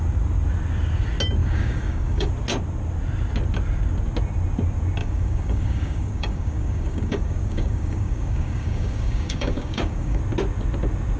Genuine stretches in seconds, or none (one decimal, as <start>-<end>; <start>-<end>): 0.0-1.4; 2.3-5.0; 10.2-11.2